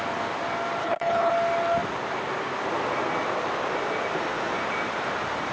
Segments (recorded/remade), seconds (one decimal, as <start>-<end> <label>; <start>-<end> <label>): 0.0-0.8 recorded; 0.8-1.3 remade; 1.3-5.5 recorded